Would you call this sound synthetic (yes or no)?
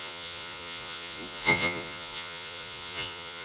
yes